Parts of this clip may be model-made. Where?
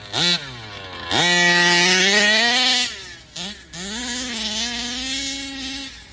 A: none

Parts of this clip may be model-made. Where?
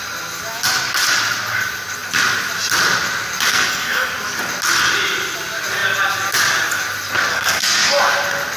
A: 3.5-4.1 (codec, SNAC); 7.3-8.0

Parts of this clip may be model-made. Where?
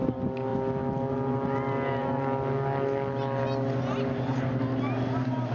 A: none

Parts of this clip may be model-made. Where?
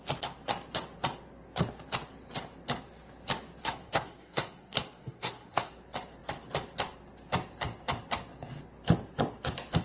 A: 3.6-5.7 (codec, SNAC)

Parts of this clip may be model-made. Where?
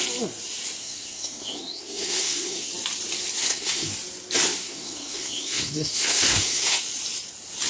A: 0.8-2.7 (codec, SNAC); 3.4-3.9; 4.6-6.8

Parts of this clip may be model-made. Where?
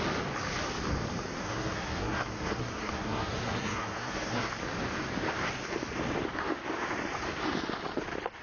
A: 1.4-4.5 (codec, SNAC)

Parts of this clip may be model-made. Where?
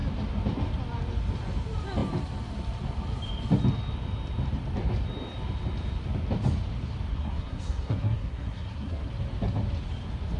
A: 7.1-9.1 (codec, SNAC)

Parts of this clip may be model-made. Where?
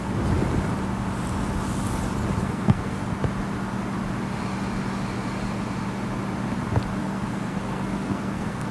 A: 2.4-3.2 (codec, SNAC); 7.0-8.7